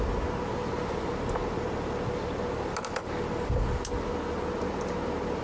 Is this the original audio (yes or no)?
yes